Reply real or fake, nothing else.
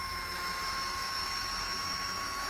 fake